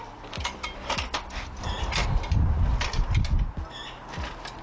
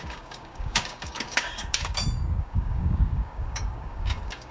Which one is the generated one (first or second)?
second